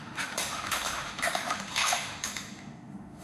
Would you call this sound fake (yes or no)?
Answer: yes